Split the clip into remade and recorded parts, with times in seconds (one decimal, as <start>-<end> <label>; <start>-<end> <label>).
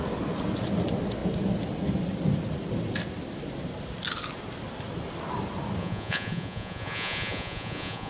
0.0-5.8 recorded; 5.8-8.1 remade